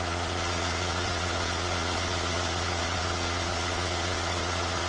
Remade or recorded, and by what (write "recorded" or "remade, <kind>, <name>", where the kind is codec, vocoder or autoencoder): remade, vocoder, Vocos